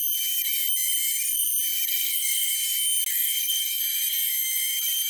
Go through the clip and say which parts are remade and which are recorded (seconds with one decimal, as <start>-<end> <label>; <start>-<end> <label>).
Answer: 0.0-1.9 recorded; 1.9-2.5 remade; 2.5-3.1 recorded; 3.1-3.8 remade; 3.8-5.1 recorded